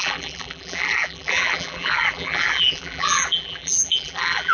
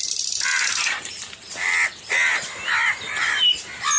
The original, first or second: second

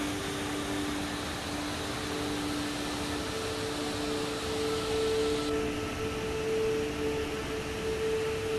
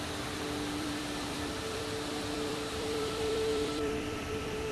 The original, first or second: first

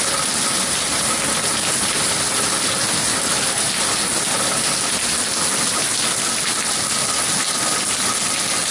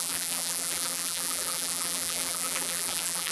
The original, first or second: first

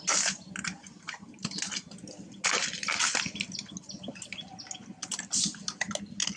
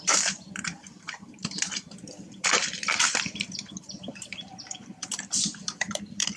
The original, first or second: first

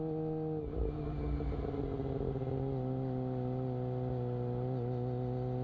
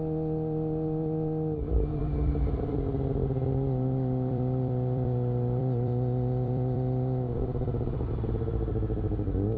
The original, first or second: first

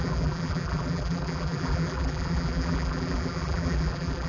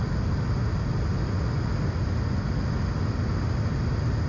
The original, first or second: second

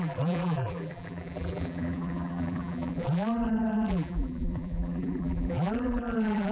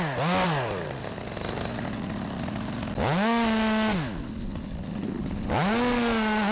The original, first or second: second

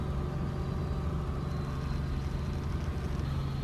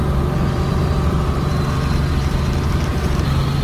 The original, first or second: first